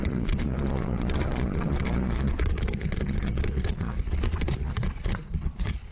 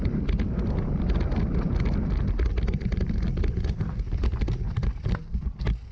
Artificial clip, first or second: first